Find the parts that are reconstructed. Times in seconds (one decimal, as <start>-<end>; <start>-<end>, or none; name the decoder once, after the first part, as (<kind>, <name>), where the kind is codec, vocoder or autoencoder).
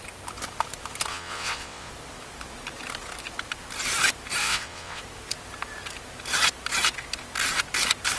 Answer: 1.1-1.9 (vocoder, WaveNeXt); 4.4-5.0